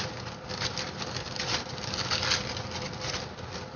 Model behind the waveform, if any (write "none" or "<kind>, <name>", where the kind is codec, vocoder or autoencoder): none